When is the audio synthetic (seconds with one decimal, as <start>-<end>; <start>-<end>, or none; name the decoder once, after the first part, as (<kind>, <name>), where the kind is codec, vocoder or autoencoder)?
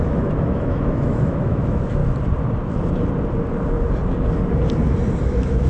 0.0-2.0 (autoencoder, DAC-VAE); 5.2-5.7